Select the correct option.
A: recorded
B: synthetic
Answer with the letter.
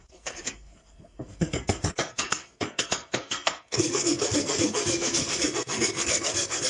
B